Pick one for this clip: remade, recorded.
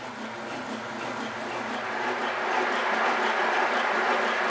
recorded